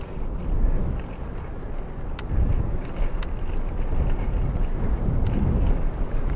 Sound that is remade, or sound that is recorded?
recorded